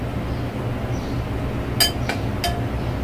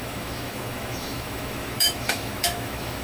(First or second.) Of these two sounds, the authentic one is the first